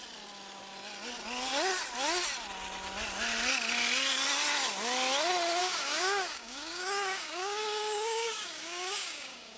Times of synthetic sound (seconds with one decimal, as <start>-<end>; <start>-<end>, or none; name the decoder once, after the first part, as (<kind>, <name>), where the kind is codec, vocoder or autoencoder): 5.6-9.6 (codec, DAC)